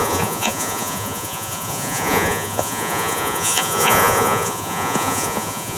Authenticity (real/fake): fake